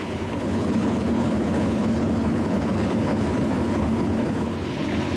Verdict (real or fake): fake